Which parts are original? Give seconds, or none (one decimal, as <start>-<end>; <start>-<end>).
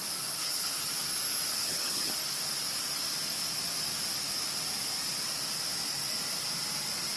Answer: 0.0-0.4; 0.9-1.5; 2.1-7.2